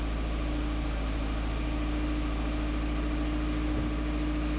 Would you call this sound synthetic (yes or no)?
no